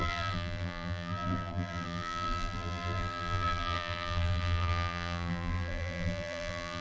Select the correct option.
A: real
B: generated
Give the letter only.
B